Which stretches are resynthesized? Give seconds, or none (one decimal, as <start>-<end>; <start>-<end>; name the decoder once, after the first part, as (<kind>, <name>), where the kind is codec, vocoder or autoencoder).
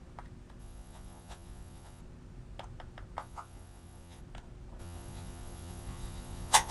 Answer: 0.6-2.0 (vocoder, Vocos); 3.2-4.2; 4.8-6.7